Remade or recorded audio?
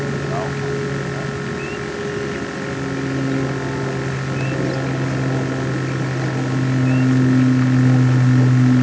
recorded